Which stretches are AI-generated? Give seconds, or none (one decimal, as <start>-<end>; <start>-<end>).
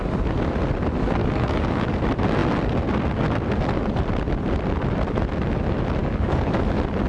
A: 1.2-1.9; 6.0-6.5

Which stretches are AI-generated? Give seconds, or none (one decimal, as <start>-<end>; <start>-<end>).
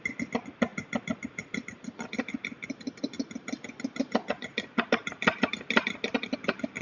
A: none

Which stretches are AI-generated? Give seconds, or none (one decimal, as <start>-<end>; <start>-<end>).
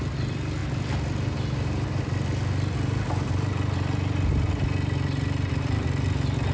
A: none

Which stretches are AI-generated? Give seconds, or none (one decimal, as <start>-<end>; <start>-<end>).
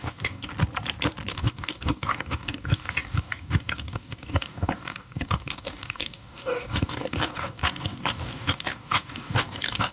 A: 0.0-0.5; 1.3-9.9